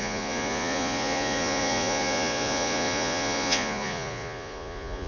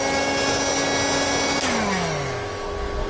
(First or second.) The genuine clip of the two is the second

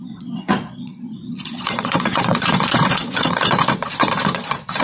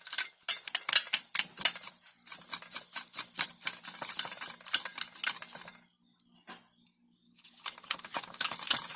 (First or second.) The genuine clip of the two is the second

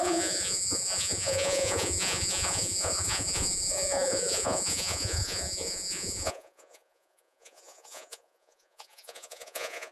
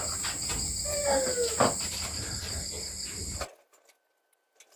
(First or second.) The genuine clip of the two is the second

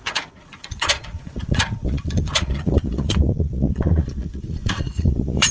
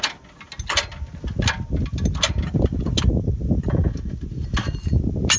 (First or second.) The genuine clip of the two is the second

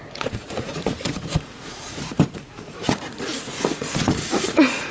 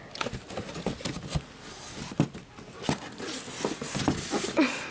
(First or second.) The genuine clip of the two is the second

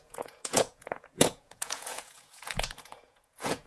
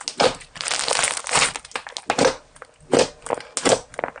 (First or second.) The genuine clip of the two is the second